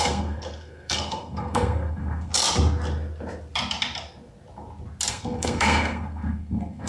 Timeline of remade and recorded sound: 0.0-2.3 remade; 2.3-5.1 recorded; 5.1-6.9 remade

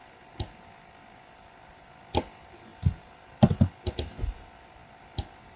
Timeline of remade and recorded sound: 0.0-5.6 recorded